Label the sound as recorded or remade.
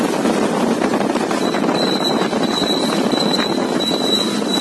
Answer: recorded